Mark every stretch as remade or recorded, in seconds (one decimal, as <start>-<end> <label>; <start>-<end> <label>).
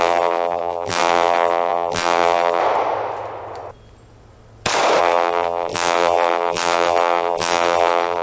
0.0-2.6 remade; 2.6-5.0 recorded; 5.0-8.2 remade